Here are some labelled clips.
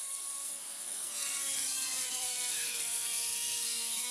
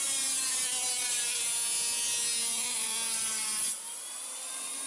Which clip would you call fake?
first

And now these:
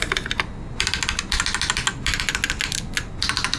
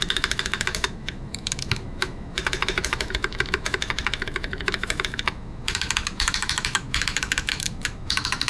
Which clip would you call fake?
second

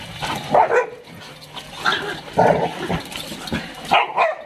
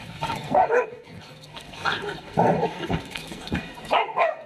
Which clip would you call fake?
second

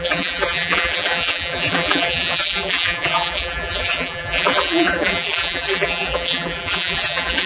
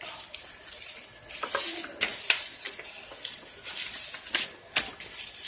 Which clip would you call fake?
first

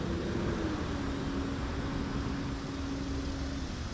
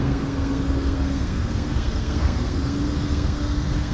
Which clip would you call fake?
second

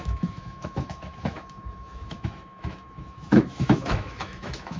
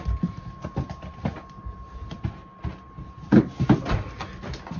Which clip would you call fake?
first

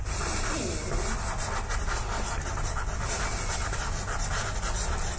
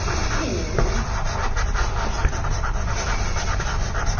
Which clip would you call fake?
second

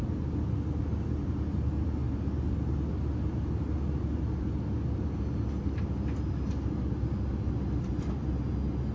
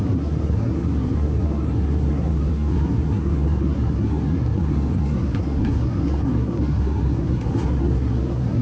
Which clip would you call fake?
second